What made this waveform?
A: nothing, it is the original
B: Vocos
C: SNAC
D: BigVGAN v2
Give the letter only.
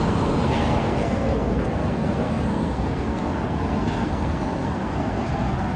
C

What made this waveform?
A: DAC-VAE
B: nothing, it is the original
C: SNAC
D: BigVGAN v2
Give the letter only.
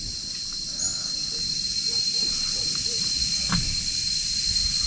B